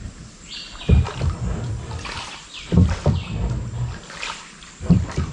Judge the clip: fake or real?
real